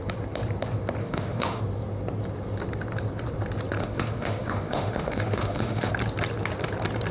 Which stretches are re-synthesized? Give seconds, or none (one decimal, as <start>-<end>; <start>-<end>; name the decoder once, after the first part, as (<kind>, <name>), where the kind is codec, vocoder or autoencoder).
1.0-1.6 (autoencoder, DAC-VAE); 3.8-5.9